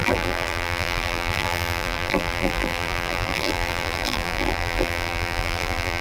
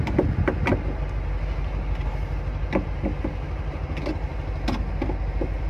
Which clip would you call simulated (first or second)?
first